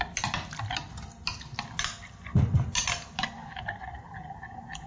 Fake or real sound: real